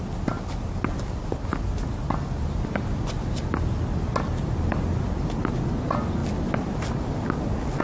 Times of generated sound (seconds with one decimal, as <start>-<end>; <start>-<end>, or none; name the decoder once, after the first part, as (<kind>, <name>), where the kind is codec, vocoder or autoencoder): none